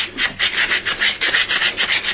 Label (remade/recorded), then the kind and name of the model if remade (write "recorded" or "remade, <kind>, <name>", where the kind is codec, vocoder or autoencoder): recorded